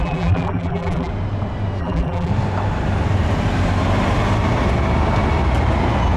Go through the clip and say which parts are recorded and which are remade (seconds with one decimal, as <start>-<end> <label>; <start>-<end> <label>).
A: 0.0-1.1 remade; 1.1-1.8 recorded; 1.8-2.3 remade; 2.3-6.2 recorded